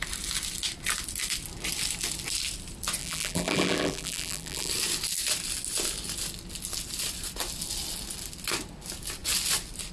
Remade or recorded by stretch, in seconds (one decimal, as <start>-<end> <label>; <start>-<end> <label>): 0.0-3.0 recorded; 3.0-4.7 remade; 4.7-9.9 recorded